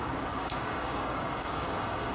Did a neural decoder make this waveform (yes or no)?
yes